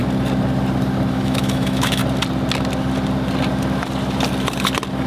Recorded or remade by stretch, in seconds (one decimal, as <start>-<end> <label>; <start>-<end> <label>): 0.0-1.1 recorded; 1.1-2.0 remade; 2.0-5.1 recorded